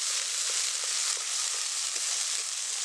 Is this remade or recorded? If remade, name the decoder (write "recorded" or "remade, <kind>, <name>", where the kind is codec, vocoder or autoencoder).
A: recorded